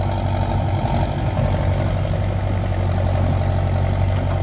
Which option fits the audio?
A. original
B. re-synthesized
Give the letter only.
A